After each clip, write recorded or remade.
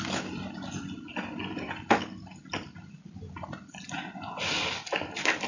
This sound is recorded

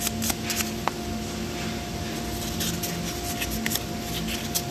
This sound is recorded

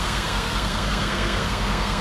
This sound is remade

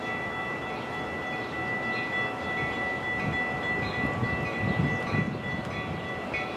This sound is recorded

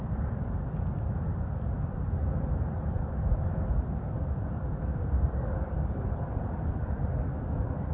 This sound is remade